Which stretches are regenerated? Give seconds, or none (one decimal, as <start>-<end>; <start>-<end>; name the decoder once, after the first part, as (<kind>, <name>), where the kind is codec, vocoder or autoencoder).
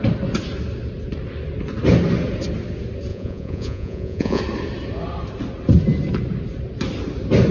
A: 3.1-4.4 (vocoder, Vocos)